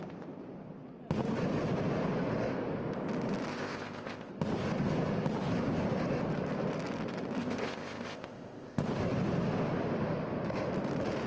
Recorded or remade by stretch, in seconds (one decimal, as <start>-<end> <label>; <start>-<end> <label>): 0.0-3.5 recorded; 3.5-4.3 remade; 4.3-7.4 recorded; 7.4-8.8 remade; 8.8-11.3 recorded